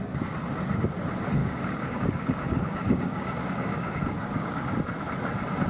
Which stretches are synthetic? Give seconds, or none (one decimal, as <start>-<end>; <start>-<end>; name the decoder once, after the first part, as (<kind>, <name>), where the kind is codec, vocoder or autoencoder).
1.4-4.8 (codec, DAC)